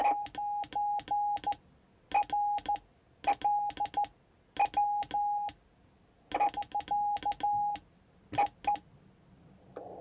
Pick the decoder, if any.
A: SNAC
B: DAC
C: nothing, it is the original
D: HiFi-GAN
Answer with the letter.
C